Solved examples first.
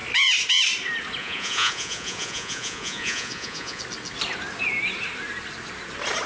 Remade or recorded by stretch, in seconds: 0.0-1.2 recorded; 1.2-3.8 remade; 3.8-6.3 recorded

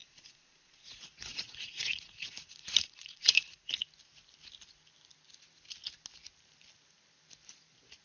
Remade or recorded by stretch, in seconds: 0.0-3.7 remade; 3.7-8.0 recorded

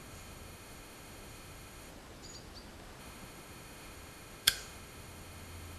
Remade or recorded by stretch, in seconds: 0.0-1.9 remade; 1.9-3.0 recorded; 3.0-5.8 remade